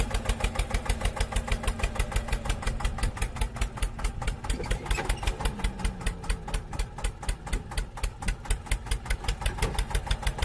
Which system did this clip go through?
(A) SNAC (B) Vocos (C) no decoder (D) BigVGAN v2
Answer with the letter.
C